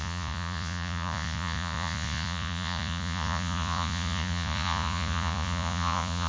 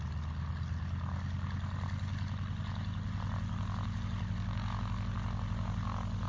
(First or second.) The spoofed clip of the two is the first